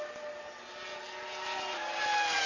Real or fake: real